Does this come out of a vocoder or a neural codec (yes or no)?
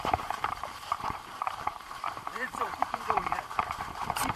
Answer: yes